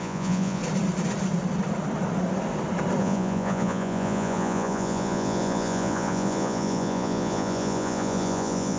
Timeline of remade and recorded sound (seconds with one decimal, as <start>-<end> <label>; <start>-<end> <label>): 0.0-0.6 remade; 0.6-3.0 recorded; 3.0-8.8 remade